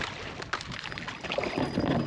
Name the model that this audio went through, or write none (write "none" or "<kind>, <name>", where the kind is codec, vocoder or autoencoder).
none